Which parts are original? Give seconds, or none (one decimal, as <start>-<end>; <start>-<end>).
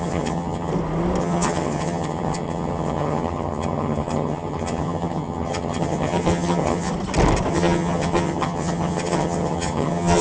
0.7-1.2; 6.9-7.5